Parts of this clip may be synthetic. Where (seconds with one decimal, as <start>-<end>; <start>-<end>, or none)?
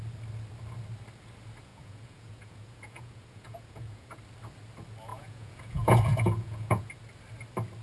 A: 1.7-4.2; 5.1-6.9